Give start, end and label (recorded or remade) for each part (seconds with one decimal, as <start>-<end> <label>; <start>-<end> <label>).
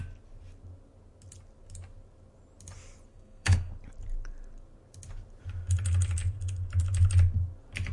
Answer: 0.0-3.1 recorded; 3.1-3.7 remade; 3.7-7.9 recorded